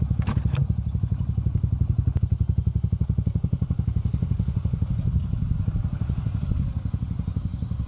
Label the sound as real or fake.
real